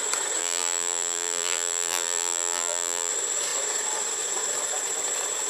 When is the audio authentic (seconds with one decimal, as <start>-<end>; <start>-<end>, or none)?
0.0-0.4; 3.1-5.5